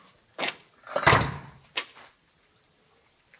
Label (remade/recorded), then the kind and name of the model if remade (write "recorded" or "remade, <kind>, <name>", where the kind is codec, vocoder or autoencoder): recorded